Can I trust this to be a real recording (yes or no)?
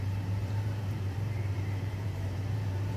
no